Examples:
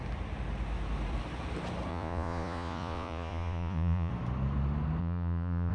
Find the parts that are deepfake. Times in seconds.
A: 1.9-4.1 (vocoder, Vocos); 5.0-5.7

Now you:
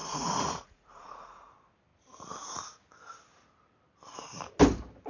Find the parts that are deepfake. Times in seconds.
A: 0.0-1.5 (vocoder, Vocos)

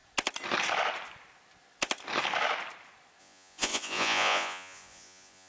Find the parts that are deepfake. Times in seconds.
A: 3.2-5.5 (vocoder, Vocos)

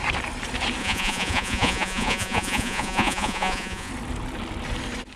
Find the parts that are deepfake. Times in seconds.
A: 0.8-3.9 (vocoder, Vocos)

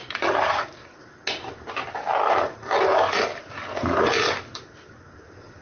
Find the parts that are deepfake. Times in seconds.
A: none

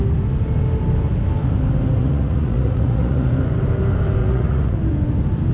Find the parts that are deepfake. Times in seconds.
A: 2.0-3.3 (vocoder, Vocos); 4.2-4.8

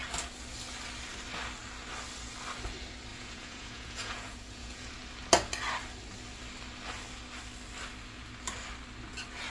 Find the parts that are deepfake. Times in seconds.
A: 3.1-4.9 (vocoder, Vocos)

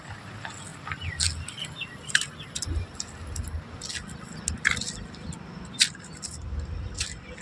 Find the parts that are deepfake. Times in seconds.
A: none